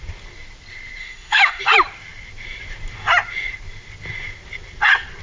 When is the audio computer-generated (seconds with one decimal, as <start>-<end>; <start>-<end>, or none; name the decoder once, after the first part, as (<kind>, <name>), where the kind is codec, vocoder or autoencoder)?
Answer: 1.0-1.6 (autoencoder, DAC-VAE)